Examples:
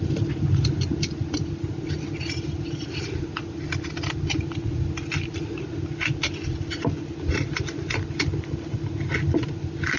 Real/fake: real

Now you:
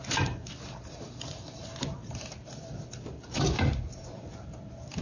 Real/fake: fake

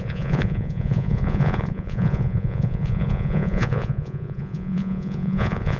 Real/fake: fake